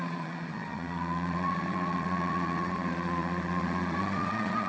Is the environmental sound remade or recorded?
remade